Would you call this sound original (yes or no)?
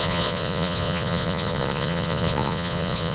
no